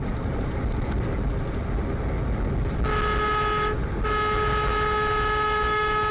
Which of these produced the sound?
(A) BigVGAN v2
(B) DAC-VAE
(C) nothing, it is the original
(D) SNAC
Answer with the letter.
C